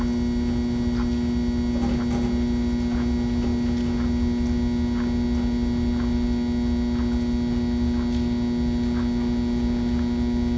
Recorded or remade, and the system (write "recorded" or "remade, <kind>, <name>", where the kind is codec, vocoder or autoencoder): recorded